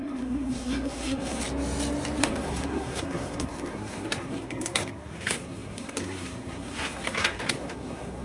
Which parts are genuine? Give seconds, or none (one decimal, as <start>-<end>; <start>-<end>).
1.4-2.2